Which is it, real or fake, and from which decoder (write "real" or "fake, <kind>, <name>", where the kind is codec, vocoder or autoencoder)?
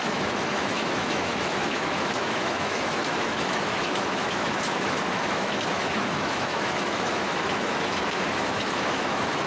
fake, autoencoder, DAC-VAE